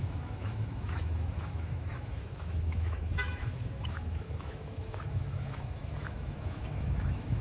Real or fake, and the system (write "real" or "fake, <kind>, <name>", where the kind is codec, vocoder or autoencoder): fake, autoencoder, DAC-VAE